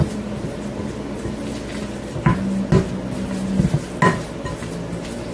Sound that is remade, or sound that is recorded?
recorded